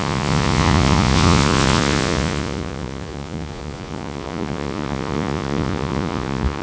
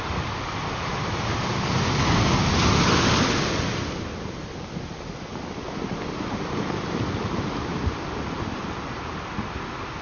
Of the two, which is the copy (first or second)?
first